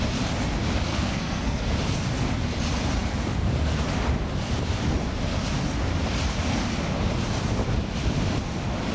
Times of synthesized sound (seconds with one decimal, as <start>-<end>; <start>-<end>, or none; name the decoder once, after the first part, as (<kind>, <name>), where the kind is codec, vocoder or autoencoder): 0.9-1.6 (codec, SNAC)